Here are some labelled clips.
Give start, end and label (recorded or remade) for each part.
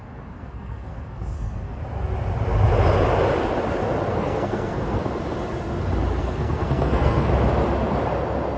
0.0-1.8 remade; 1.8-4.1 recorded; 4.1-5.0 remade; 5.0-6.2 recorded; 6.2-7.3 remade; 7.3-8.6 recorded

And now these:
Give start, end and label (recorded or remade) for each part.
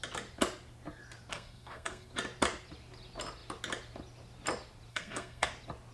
0.0-1.3 recorded; 1.3-2.1 remade; 2.1-4.9 recorded; 4.9-5.5 remade; 5.5-5.9 recorded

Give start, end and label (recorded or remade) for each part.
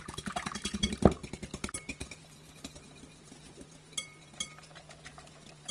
0.0-5.7 recorded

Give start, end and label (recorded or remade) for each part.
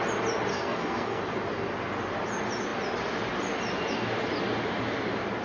0.0-0.5 recorded; 0.5-1.2 remade; 1.2-5.4 recorded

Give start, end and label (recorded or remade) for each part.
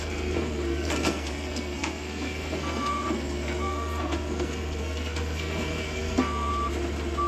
0.0-6.5 remade; 6.5-7.3 recorded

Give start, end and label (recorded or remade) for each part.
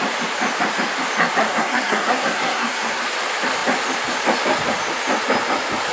0.0-1.4 recorded; 1.4-3.0 remade; 3.0-5.9 recorded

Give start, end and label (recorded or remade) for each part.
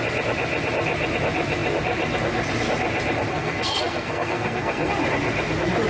0.0-3.3 recorded; 3.3-4.9 remade; 4.9-5.9 recorded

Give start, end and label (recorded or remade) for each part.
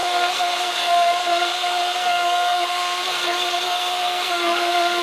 0.0-5.0 remade